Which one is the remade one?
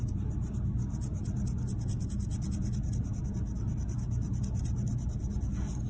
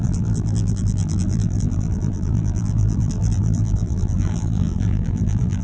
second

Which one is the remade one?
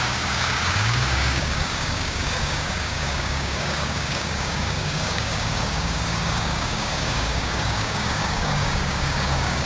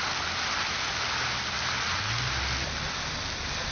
first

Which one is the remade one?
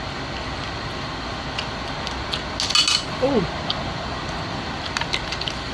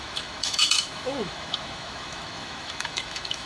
second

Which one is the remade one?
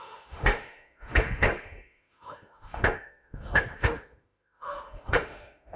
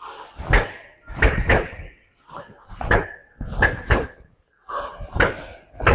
first